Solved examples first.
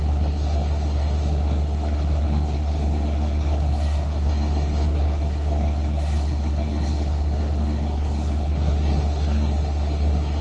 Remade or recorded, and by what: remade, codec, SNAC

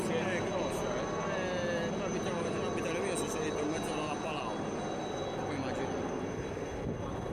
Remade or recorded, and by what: recorded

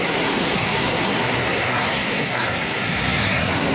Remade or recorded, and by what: remade, codec, SNAC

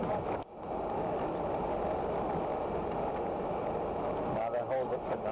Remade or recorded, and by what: recorded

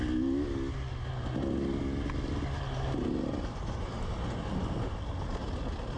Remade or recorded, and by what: recorded